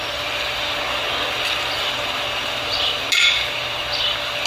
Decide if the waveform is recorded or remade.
recorded